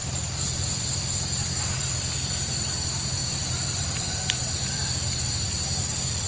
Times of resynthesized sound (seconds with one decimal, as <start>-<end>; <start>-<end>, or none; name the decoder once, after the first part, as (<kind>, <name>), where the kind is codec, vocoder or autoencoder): 0.0-1.0 (vocoder, BigVGAN v2); 3.2-5.7